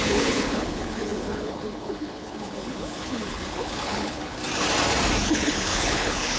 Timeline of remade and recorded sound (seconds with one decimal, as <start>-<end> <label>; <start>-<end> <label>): 0.0-4.4 remade; 4.4-5.2 recorded; 5.2-6.4 remade